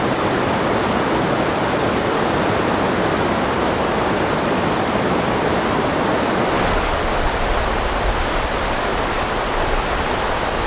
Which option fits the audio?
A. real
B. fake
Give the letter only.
A